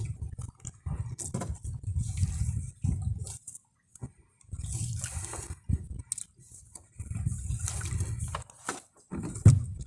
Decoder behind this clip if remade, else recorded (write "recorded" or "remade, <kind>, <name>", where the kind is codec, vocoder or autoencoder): recorded